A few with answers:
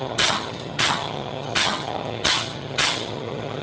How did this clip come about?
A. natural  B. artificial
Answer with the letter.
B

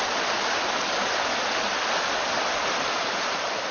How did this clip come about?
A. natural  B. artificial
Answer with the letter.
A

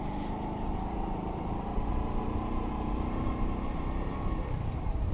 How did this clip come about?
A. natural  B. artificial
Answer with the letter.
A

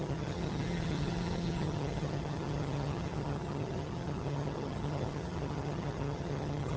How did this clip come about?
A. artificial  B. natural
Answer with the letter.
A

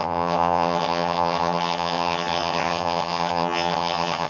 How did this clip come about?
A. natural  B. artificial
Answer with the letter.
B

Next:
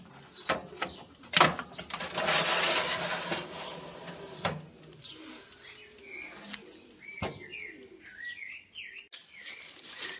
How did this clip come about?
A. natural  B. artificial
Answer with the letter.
A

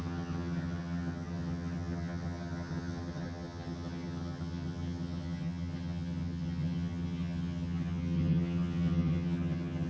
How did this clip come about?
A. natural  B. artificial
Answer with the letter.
B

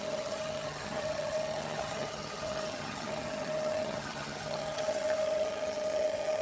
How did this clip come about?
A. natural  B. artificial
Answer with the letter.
B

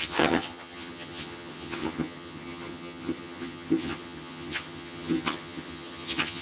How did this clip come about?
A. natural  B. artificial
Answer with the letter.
B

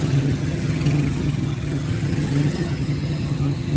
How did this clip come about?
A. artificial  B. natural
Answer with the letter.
A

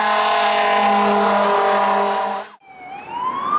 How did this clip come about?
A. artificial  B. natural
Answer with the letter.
B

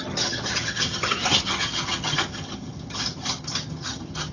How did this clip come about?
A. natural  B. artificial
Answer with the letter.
B